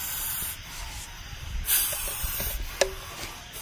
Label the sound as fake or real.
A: real